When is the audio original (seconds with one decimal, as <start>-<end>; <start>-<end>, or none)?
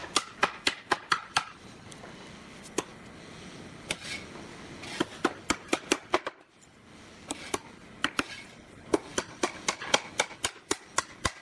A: 0.0-11.4